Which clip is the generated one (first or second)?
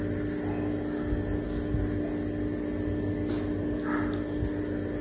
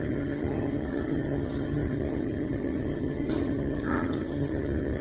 second